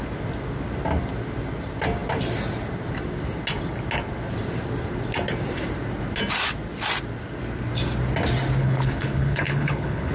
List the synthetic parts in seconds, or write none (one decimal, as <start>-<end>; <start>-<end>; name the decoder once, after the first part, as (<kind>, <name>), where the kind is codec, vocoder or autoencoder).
8.6-10.1 (codec, HILCodec)